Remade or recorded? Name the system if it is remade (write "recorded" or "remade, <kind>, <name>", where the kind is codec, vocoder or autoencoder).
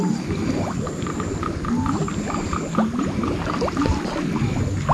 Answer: recorded